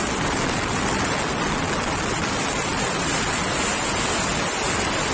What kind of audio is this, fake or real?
real